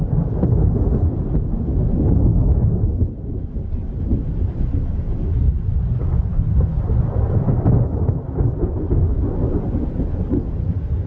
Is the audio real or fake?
real